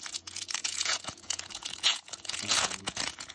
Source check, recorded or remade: remade